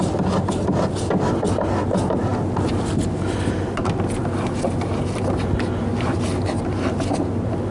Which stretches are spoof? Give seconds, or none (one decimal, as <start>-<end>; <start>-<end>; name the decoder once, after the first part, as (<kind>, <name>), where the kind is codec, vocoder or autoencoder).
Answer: none